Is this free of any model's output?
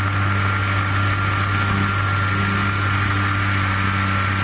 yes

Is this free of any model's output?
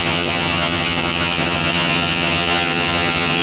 no